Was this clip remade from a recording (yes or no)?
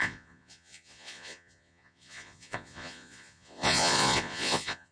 yes